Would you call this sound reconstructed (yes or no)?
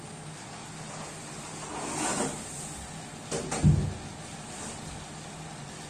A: no